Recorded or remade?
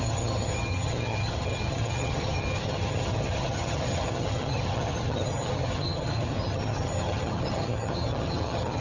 remade